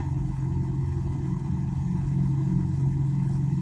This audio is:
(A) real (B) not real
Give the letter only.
B